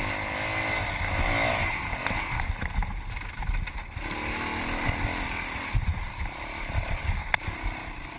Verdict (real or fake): real